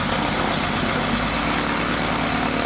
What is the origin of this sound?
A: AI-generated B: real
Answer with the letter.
B